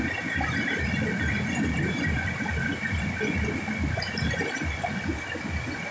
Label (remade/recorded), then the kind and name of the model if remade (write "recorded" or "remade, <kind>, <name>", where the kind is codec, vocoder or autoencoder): recorded